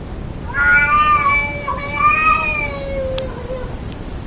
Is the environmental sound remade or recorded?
recorded